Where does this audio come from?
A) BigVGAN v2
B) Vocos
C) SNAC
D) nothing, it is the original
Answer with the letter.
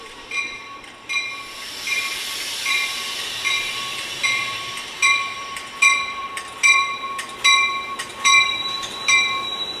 A